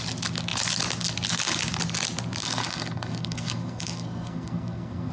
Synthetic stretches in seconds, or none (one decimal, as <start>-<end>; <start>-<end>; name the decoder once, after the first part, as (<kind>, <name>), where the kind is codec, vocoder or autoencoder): 2.4-5.1 (codec, SNAC)